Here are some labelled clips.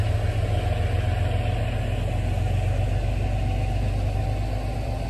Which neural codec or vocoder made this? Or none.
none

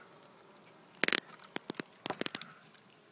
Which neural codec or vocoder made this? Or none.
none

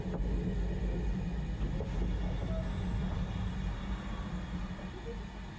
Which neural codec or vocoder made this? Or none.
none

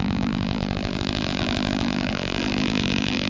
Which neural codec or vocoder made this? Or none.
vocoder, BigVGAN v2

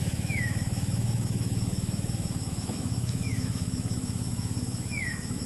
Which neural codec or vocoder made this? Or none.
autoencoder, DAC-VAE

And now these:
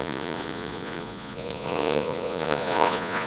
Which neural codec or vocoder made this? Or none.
vocoder, Vocos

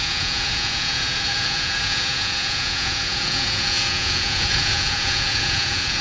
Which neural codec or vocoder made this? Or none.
vocoder, Vocos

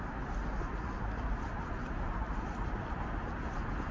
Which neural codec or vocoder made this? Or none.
none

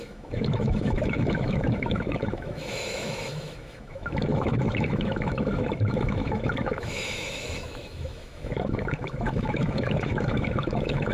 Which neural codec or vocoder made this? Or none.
autoencoder, DAC-VAE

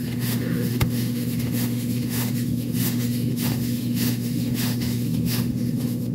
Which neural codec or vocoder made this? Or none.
autoencoder, DAC-VAE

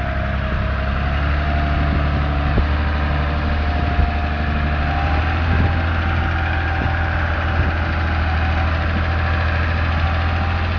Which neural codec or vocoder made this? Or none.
none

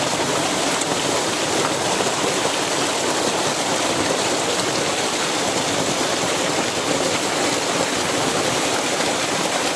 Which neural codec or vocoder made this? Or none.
none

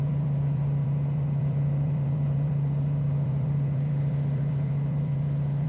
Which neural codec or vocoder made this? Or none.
vocoder, BigVGAN v2